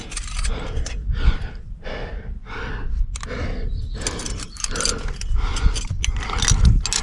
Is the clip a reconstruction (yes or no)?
no